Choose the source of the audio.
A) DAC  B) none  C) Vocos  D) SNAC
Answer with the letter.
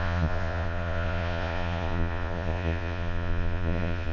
C